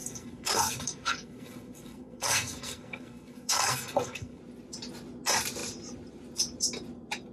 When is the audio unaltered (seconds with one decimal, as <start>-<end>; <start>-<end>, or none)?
4.4-7.3